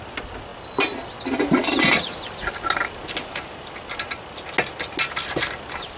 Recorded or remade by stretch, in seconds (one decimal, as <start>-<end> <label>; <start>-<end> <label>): 0.0-6.0 recorded